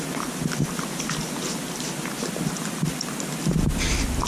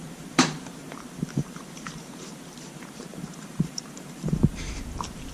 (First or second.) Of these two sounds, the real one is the first